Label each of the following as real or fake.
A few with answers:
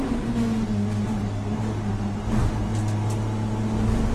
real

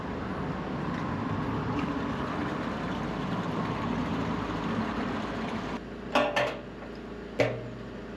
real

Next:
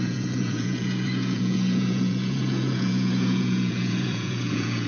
fake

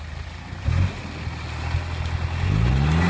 real